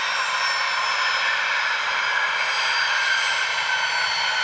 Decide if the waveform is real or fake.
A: real